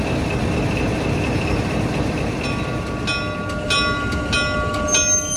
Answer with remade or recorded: recorded